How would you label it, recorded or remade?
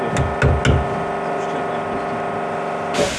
recorded